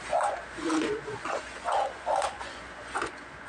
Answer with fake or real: fake